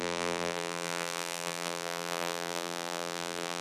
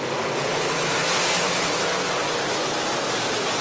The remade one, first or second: first